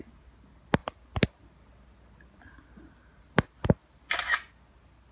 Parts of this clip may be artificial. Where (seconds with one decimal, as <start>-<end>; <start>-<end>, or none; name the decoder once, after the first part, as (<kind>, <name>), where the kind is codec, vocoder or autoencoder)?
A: none